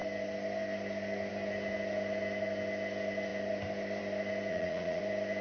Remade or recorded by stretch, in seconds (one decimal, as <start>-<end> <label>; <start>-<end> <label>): 0.0-4.5 recorded; 4.5-5.0 remade; 5.0-5.4 recorded